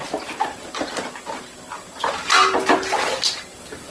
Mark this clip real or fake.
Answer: real